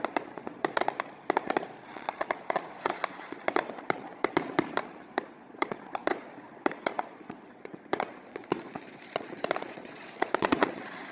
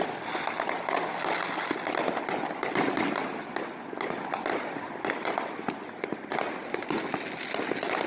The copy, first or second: first